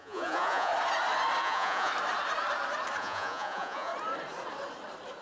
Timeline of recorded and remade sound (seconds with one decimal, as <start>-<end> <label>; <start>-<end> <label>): 0.0-0.7 remade; 0.7-1.4 recorded; 1.4-1.9 remade; 1.9-3.0 recorded; 3.0-3.9 remade; 3.9-5.2 recorded